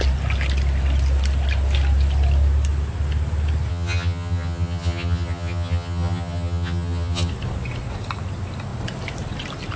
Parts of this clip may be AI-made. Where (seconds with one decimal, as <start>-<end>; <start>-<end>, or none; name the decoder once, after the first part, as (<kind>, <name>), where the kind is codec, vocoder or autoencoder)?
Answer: 3.7-7.3 (vocoder, HiFi-GAN)